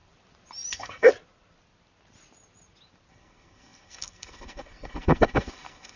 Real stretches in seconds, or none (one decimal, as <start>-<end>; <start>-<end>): 0.0-0.7; 1.1-3.1